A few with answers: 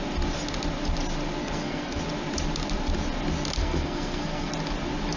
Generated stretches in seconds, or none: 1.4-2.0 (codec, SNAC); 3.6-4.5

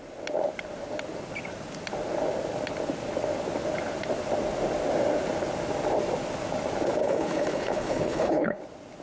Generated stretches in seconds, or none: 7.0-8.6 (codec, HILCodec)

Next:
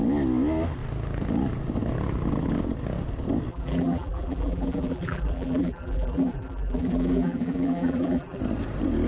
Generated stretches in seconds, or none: 3.5-8.4 (vocoder, BigVGAN v2)

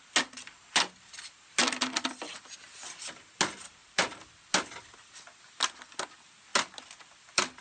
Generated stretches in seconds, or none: none